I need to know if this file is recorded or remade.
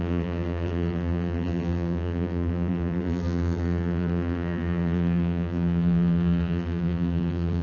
remade